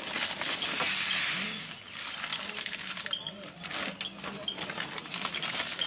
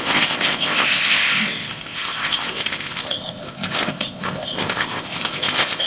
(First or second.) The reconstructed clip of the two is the second